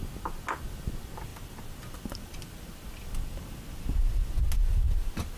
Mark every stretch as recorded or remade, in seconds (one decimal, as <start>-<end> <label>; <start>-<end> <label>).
0.0-5.4 recorded